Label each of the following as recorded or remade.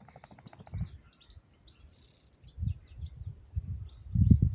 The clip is recorded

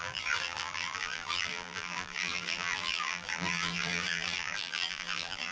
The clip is remade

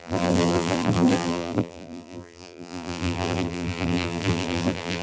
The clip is remade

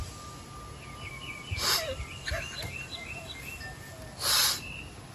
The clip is recorded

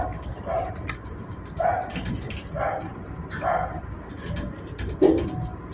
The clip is recorded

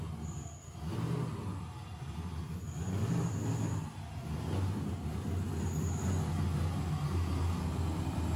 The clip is recorded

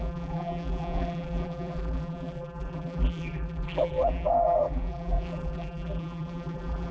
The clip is remade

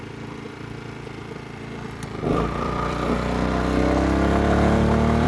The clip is remade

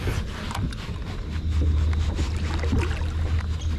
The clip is recorded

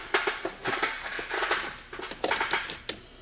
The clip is recorded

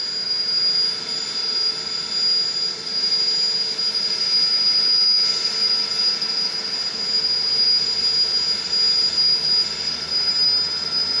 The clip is recorded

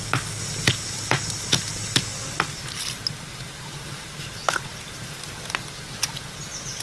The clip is recorded